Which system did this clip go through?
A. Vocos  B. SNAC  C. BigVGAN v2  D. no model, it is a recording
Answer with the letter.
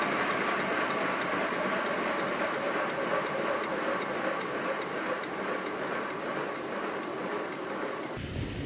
C